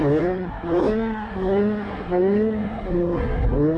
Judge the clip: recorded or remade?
remade